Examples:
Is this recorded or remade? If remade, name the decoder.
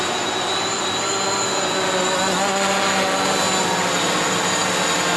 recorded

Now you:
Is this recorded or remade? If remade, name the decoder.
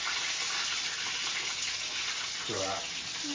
recorded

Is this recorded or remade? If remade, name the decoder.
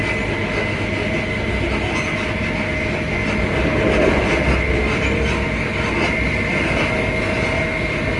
recorded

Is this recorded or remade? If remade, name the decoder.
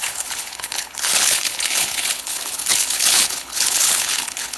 remade, codec, HILCodec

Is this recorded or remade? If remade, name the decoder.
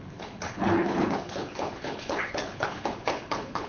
remade, codec, HILCodec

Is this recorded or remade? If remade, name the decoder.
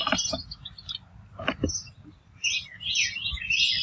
recorded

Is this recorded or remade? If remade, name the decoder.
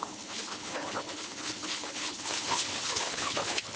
remade, codec, HILCodec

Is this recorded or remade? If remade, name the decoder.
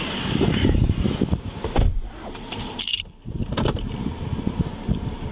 recorded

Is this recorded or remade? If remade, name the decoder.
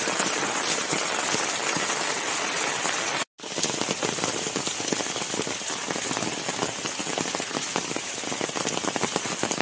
recorded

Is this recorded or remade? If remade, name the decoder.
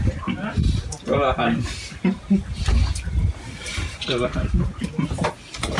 recorded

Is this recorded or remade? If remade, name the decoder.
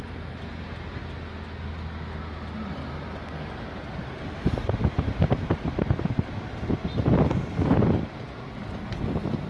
recorded